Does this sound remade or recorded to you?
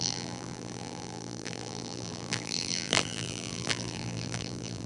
remade